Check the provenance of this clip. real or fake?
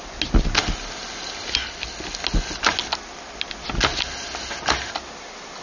real